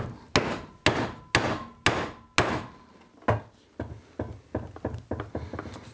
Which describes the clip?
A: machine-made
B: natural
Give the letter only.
B